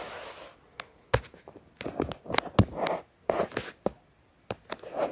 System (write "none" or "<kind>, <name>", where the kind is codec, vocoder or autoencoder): none